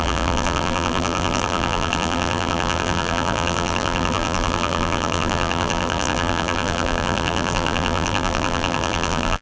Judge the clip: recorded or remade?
remade